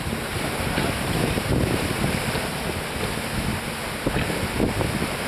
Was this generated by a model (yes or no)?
no